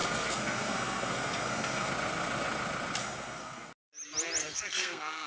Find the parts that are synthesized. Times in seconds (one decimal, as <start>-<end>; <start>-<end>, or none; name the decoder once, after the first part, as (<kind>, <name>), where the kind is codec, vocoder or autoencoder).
0.0-1.9 (codec, SNAC); 3.0-3.7; 4.4-5.3